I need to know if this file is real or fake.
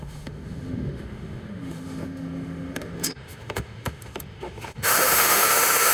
fake